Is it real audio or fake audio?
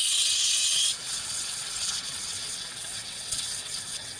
fake